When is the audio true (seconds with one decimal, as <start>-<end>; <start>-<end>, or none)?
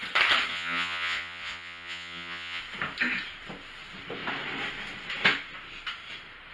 0.0-0.5; 2.6-6.5